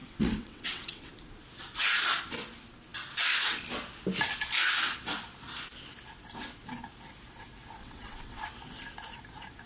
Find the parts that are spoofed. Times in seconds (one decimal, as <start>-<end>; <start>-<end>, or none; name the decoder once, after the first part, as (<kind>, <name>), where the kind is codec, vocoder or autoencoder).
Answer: 0.0-1.1 (vocoder, WaveNeXt); 7.8-8.4